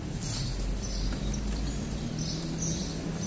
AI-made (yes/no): no